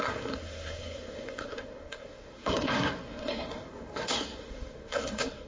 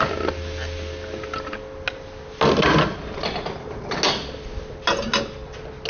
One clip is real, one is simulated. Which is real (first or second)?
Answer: second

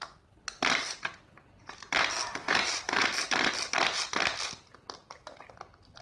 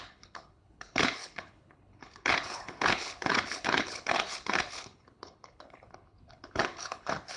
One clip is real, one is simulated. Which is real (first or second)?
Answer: first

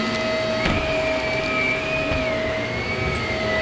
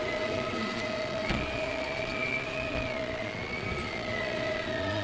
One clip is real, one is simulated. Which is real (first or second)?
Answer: first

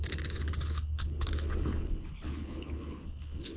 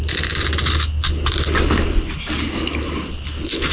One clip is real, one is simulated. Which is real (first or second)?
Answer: second